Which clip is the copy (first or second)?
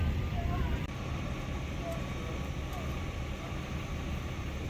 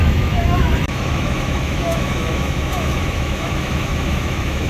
second